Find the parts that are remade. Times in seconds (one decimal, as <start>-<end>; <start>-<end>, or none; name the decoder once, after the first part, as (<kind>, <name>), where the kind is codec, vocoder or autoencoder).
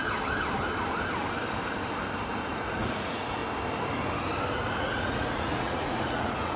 2.5-3.4 (vocoder, Vocos); 4.7-6.6